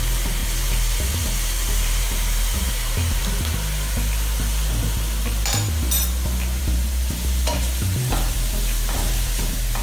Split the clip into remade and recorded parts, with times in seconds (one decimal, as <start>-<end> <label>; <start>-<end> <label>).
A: 0.0-3.2 remade; 3.2-6.6 recorded; 6.6-9.8 remade